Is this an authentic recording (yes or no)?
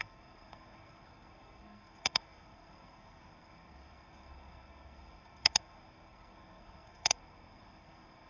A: no